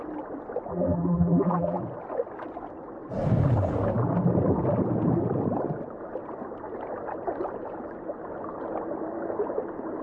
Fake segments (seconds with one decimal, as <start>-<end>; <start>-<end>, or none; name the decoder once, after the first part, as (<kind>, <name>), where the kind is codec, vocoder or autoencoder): 0.7-1.8 (vocoder, BigVGAN v2)